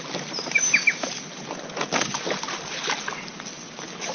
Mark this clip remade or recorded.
recorded